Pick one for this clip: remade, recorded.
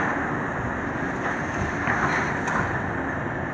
recorded